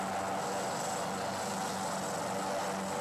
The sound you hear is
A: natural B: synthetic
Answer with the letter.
A